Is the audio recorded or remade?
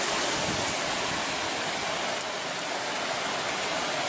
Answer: recorded